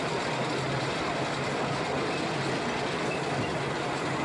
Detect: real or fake real